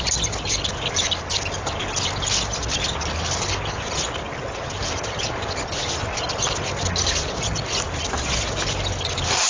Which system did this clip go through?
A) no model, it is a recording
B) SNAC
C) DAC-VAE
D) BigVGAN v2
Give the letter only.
A